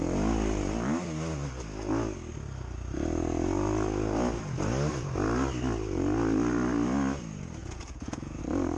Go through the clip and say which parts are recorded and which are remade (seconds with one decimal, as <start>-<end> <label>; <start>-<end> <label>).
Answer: 0.0-7.6 recorded; 7.6-8.4 remade; 8.4-8.8 recorded